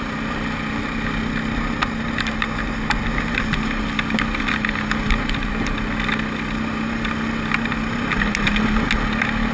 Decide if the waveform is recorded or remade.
recorded